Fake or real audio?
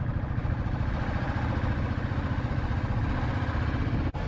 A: real